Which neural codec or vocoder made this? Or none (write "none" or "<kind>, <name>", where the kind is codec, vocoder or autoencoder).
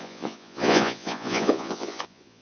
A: vocoder, Vocos